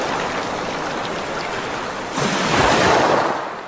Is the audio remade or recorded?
recorded